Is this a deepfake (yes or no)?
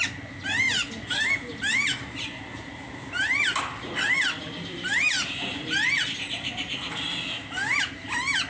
no